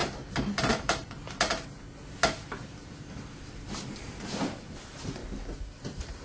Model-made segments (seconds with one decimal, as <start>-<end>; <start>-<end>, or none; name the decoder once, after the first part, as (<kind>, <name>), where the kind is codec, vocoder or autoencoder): 0.7-1.5 (vocoder, BigVGAN v2); 2.4-5.2; 5.8-6.2